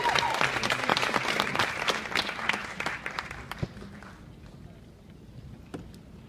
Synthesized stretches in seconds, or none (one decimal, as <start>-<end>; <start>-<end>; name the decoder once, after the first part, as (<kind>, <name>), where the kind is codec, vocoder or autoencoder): 0.9-1.7 (vocoder, BigVGAN v2)